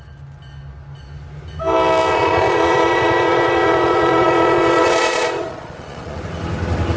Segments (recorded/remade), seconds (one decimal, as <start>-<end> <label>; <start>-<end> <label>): 0.0-2.1 recorded; 2.1-6.2 remade; 6.2-7.0 recorded